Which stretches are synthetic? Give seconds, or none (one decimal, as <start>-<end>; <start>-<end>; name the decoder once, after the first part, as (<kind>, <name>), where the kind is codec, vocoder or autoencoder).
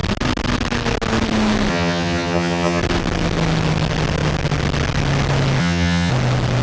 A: 1.7-2.8 (vocoder, HiFi-GAN); 5.6-6.1